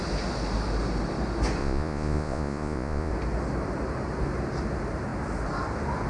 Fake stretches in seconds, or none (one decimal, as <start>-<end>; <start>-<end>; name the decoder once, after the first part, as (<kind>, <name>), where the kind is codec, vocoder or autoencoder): 1.6-3.1 (vocoder, Vocos)